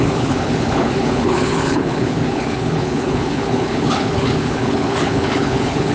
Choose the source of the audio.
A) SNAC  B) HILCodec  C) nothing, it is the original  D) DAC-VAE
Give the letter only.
B